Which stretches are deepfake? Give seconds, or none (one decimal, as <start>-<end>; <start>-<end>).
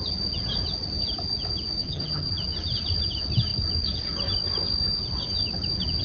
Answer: 1.8-2.3